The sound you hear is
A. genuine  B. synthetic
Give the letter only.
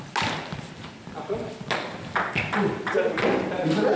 A